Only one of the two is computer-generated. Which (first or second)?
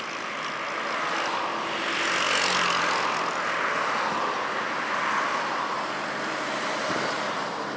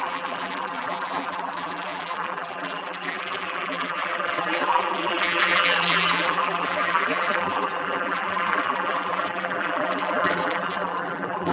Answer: second